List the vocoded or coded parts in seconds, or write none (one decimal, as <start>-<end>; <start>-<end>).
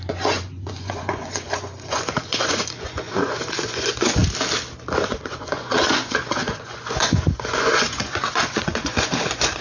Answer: 0.0-4.2; 5.0-9.6